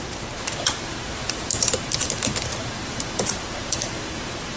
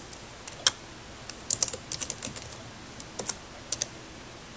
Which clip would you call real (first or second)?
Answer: second